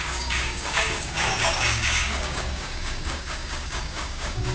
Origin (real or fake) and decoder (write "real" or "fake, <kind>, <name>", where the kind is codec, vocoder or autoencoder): fake, codec, DAC